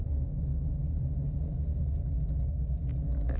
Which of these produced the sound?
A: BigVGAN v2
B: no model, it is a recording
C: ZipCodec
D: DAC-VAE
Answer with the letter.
B